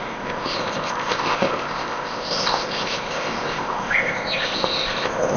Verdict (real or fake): fake